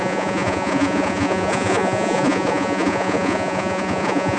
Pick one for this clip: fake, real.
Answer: fake